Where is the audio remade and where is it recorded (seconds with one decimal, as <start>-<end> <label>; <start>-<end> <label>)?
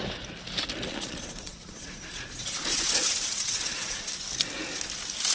0.0-0.9 recorded; 0.9-4.1 remade; 4.1-5.3 recorded